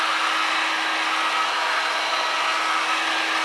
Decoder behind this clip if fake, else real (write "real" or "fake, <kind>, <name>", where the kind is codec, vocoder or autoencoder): real